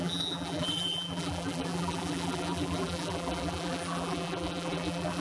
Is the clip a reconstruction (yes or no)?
yes